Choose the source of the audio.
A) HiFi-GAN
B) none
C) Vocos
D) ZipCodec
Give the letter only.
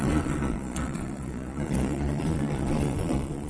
C